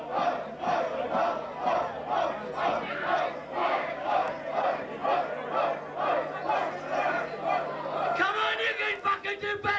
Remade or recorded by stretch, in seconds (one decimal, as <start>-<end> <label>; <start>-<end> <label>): 0.0-3.6 recorded; 3.6-4.3 remade; 4.3-9.8 recorded